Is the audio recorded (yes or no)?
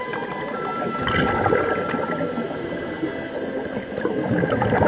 yes